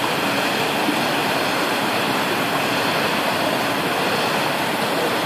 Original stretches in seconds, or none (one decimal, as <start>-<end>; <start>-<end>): 0.0-1.2; 2.7-5.3